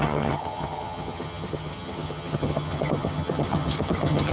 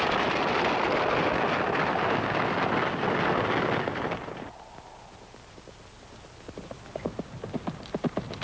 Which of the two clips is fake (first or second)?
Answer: first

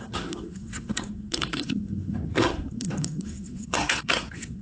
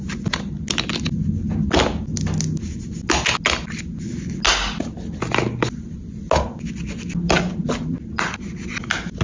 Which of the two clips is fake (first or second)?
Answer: first